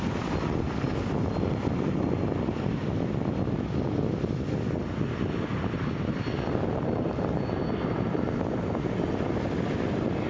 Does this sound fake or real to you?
real